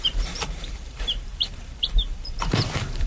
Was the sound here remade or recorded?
remade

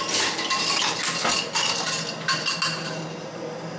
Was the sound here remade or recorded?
recorded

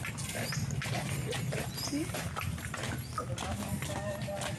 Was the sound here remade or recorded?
recorded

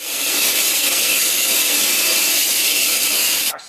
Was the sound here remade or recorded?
remade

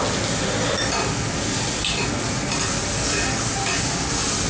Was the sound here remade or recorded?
recorded